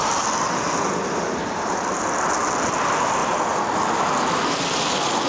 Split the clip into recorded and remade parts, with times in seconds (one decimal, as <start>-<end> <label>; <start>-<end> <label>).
0.0-2.0 remade; 2.0-3.2 recorded; 3.2-3.9 remade; 3.9-5.3 recorded